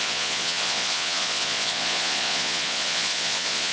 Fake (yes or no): yes